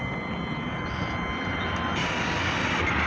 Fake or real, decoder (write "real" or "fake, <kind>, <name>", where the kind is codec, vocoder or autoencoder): real